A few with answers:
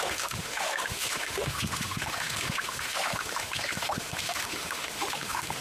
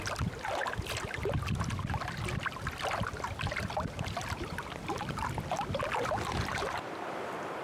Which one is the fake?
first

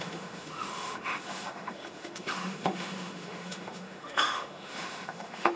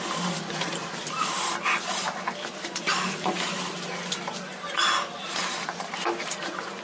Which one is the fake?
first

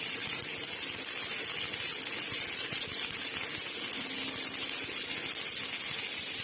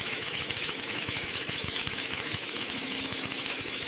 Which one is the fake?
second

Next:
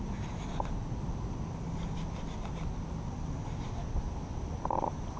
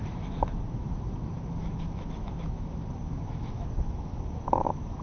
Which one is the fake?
second